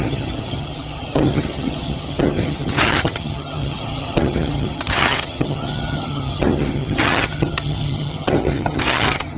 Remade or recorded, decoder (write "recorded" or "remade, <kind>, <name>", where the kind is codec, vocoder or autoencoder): remade, vocoder, HiFi-GAN